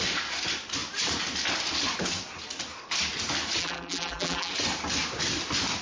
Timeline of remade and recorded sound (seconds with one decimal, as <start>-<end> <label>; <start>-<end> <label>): 0.0-3.6 recorded; 3.6-4.5 remade; 4.5-5.8 recorded